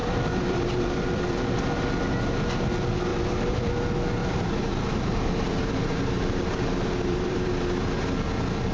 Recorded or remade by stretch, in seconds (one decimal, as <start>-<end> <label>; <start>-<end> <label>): 0.0-1.6 remade; 1.6-3.1 recorded; 3.1-3.7 remade; 3.7-4.2 recorded; 4.2-7.5 remade; 7.5-8.7 recorded